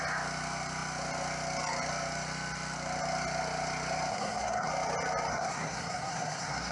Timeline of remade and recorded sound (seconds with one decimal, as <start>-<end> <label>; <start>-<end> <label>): 0.0-4.1 recorded; 4.1-4.7 remade; 4.7-5.3 recorded; 5.3-6.7 remade